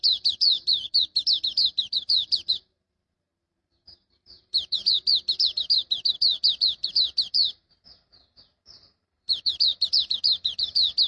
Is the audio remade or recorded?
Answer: remade